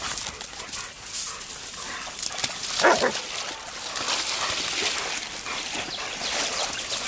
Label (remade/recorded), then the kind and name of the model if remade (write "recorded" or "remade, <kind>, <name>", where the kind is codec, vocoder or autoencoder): recorded